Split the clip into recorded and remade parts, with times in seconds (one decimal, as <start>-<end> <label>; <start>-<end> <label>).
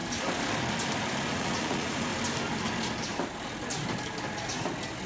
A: 0.0-1.3 recorded; 1.3-2.1 remade; 2.1-5.1 recorded